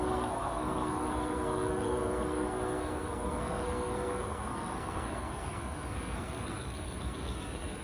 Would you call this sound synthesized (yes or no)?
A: yes